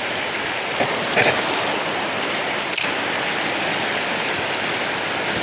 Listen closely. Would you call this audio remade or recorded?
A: recorded